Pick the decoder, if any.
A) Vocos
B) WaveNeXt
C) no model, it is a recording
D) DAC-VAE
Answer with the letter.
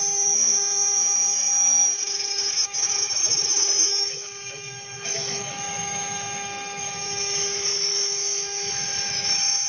D